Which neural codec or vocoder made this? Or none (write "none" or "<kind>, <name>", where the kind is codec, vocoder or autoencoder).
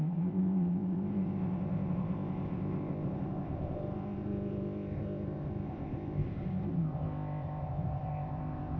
codec, ZipCodec